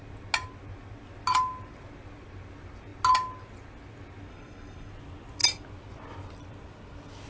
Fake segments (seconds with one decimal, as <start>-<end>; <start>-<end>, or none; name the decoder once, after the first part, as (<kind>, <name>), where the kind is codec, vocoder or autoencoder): 4.3-4.9 (codec, HILCodec)